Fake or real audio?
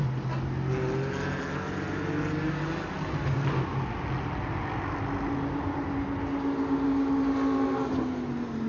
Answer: real